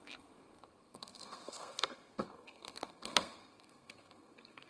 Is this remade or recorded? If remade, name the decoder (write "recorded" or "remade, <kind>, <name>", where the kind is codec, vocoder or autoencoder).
remade, codec, SNAC